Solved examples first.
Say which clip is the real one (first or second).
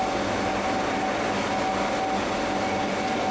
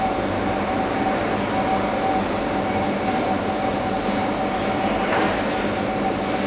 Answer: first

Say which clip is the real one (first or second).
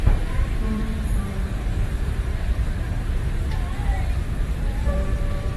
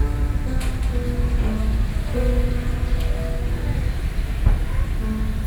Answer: second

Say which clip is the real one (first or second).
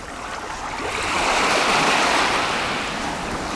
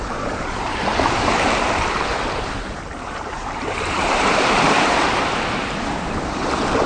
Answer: first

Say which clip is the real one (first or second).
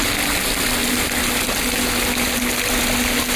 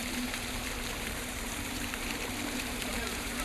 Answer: first